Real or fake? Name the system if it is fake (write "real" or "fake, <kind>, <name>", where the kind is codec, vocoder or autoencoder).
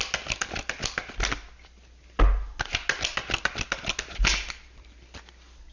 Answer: real